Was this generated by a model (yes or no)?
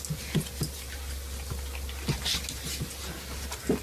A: no